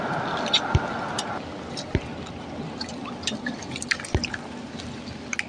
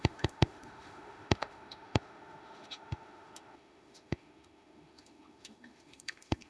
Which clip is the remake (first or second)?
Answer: second